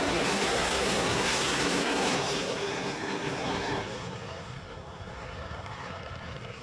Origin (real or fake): fake